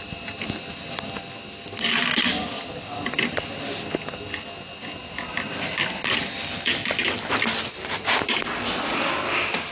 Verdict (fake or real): real